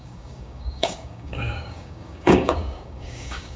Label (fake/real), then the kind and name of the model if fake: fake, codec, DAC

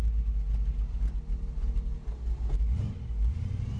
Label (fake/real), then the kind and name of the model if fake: real